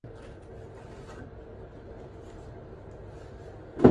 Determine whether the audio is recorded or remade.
recorded